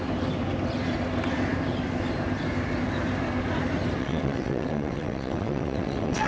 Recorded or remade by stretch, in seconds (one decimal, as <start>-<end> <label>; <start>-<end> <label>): 0.0-4.0 recorded; 4.0-6.3 remade